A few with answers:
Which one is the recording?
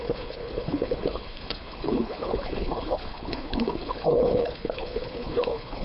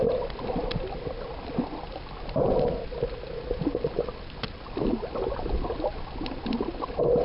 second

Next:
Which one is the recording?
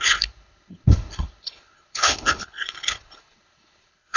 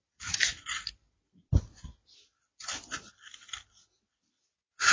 second